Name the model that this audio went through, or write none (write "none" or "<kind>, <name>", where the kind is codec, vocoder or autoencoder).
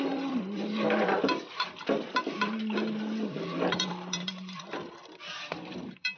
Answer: vocoder, BigVGAN v2